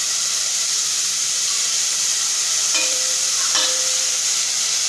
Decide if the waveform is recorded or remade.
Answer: remade